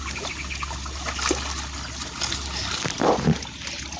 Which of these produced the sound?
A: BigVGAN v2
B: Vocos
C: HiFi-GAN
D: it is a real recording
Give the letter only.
D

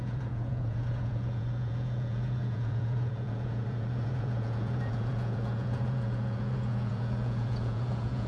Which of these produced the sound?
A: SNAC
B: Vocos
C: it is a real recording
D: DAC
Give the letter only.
B